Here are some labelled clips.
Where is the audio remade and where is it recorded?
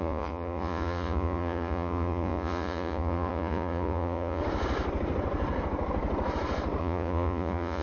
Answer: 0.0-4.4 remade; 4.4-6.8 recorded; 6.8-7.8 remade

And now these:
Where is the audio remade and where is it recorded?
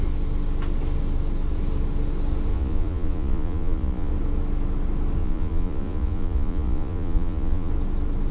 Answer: 0.0-2.5 recorded; 2.5-4.1 remade; 4.1-5.2 recorded; 5.2-7.7 remade; 7.7-8.3 recorded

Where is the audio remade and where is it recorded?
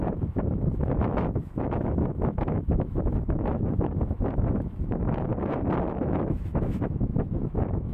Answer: 0.0-5.3 remade; 5.3-6.0 recorded; 6.0-7.9 remade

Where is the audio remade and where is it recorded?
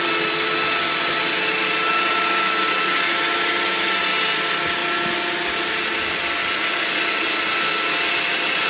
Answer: 0.0-8.7 recorded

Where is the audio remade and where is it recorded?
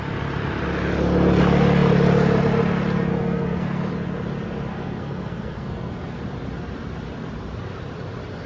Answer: 0.0-3.1 recorded; 3.1-3.9 remade; 3.9-4.7 recorded; 4.7-6.2 remade; 6.2-8.5 recorded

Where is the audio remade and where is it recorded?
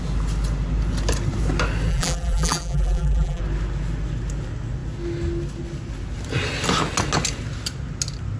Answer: 0.0-1.9 recorded; 1.9-3.4 remade; 3.4-8.4 recorded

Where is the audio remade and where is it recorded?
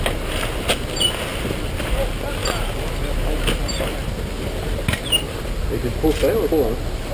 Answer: 0.0-7.1 recorded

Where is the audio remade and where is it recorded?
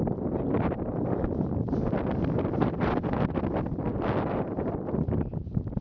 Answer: 0.0-5.8 remade